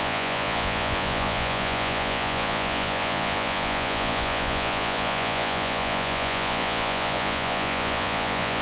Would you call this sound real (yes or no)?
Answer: no